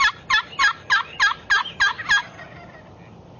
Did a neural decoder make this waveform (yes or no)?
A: no